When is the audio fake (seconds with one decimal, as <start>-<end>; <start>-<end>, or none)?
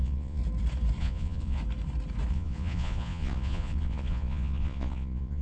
0.0-0.4; 1.0-1.6; 2.3-5.4